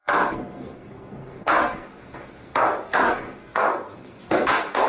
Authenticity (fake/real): fake